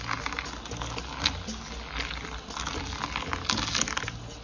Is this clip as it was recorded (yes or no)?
yes